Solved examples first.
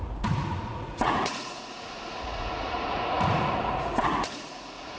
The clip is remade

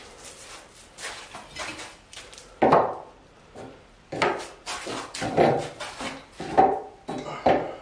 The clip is recorded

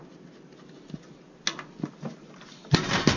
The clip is recorded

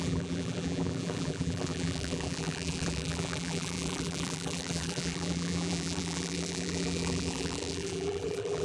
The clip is remade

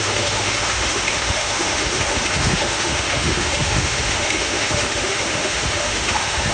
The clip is remade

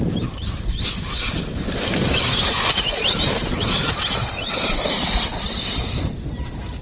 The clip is remade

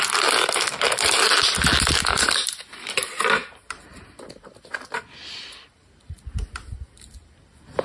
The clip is recorded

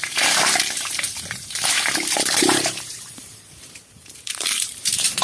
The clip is remade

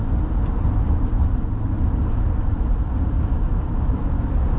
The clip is recorded